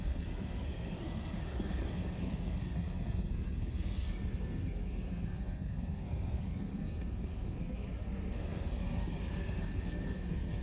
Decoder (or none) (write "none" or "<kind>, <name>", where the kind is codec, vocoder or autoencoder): codec, SNAC